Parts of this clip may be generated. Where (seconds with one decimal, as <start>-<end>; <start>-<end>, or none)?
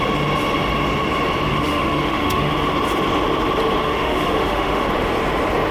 1.5-2.5; 3.8-4.9